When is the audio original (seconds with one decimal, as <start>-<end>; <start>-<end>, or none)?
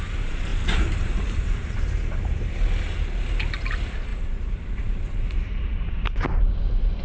0.0-0.5; 3.1-4.1; 5.8-7.0